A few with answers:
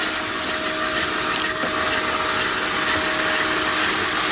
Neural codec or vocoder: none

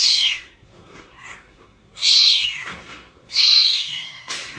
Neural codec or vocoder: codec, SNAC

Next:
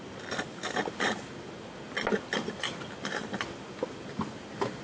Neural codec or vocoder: none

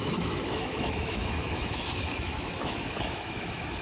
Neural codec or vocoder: autoencoder, DAC-VAE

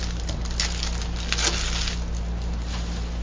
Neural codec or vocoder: none